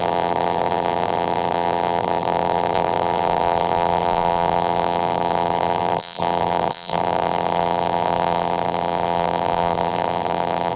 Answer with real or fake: fake